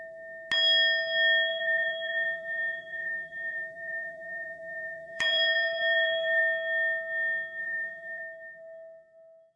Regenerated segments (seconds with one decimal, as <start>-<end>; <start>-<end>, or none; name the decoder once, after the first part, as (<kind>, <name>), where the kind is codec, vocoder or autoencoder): 1.5-6.4 (vocoder, BigVGAN v2); 7.6-8.2